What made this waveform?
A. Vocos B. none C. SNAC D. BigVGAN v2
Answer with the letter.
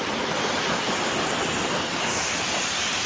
B